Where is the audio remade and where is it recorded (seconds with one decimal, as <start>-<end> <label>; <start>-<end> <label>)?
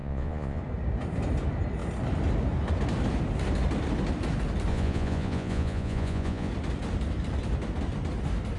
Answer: 0.0-0.6 remade; 0.6-4.7 recorded; 4.7-6.5 remade; 6.5-8.6 recorded